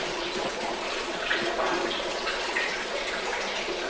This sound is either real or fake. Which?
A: fake